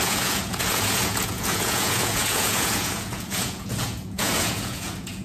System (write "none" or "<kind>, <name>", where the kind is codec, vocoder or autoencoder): vocoder, Vocos